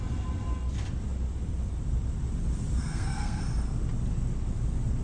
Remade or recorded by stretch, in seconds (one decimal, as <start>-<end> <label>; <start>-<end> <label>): 0.0-2.8 recorded; 2.8-3.4 remade; 3.4-5.0 recorded